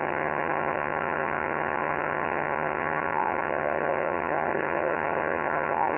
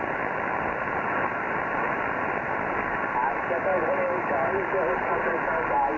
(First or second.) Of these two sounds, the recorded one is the second